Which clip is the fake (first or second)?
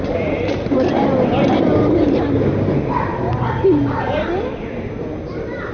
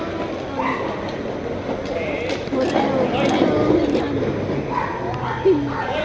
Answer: first